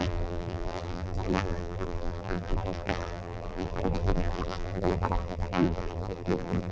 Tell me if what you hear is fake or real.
fake